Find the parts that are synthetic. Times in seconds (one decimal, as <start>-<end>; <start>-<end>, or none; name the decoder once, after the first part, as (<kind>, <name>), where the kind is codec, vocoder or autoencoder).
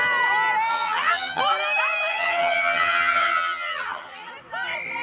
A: 0.7-1.4 (vocoder, HiFi-GAN); 2.1-4.3